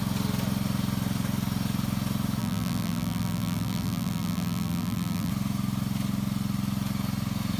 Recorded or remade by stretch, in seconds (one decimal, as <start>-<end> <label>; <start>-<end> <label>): 0.0-2.4 recorded; 2.4-5.3 remade; 5.3-7.6 recorded